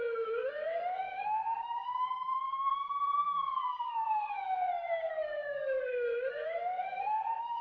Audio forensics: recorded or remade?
remade